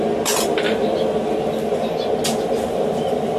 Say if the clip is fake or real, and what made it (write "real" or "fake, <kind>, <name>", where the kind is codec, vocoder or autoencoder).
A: real